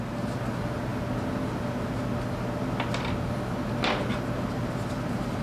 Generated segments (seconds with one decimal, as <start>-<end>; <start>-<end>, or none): none

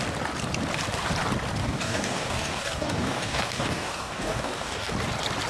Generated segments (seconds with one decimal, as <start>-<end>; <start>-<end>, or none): 1.6-4.9